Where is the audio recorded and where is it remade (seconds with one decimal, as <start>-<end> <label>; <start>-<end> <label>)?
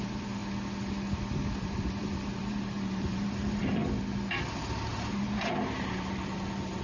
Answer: 0.0-0.4 remade; 0.4-1.6 recorded; 1.6-3.8 remade; 3.8-4.5 recorded; 4.5-6.8 remade